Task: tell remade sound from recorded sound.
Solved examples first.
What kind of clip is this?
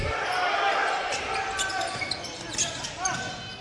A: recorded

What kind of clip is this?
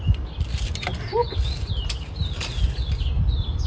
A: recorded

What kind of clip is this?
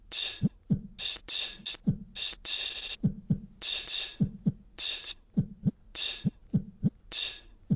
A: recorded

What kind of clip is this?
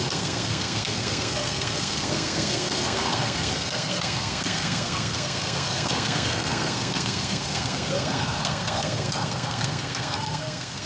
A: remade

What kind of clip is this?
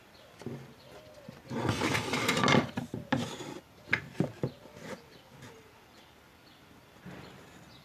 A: recorded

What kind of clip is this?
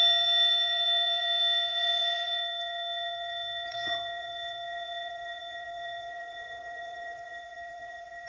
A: remade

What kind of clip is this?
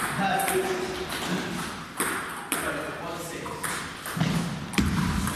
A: recorded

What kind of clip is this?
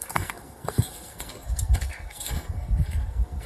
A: remade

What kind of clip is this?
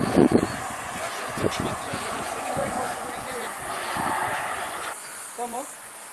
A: remade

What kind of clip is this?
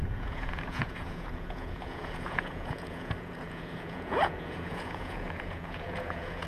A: remade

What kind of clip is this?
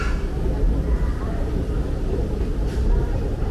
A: recorded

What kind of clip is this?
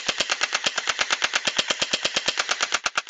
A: recorded